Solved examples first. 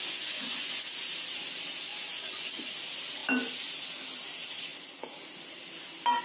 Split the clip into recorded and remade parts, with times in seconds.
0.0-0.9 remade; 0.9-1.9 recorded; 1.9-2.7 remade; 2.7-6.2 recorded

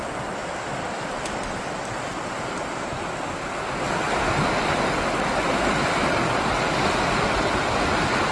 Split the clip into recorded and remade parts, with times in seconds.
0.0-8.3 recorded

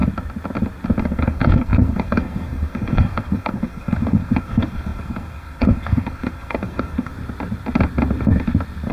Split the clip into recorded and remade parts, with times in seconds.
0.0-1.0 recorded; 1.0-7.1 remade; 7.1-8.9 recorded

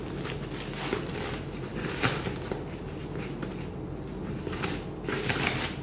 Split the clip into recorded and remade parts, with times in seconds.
0.0-5.8 recorded